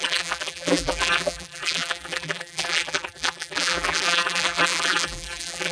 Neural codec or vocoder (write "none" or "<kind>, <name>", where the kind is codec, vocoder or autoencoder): vocoder, BigVGAN v2